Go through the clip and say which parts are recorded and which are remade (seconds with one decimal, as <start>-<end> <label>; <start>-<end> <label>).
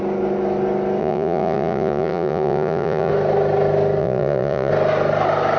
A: 0.0-1.0 recorded; 1.0-3.1 remade; 3.1-4.0 recorded; 4.0-4.7 remade; 4.7-5.6 recorded